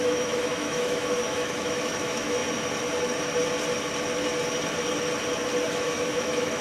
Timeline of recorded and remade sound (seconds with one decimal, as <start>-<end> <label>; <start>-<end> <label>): 0.0-2.4 remade; 2.4-5.7 recorded; 5.7-6.6 remade